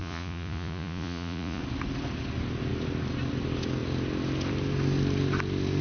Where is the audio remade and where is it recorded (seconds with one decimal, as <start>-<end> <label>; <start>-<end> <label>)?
0.0-1.6 remade; 1.6-5.8 recorded